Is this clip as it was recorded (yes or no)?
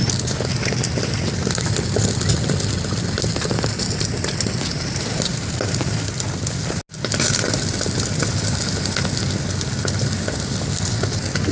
yes